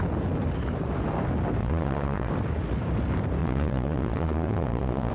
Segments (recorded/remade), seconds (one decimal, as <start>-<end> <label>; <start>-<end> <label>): 0.0-1.6 recorded; 1.6-2.3 remade; 2.3-3.4 recorded; 3.4-5.1 remade